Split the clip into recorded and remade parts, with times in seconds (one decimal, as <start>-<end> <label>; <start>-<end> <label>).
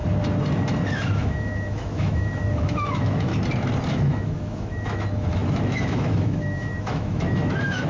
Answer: 0.0-0.9 recorded; 0.9-3.3 remade; 3.3-3.9 recorded; 3.9-7.9 remade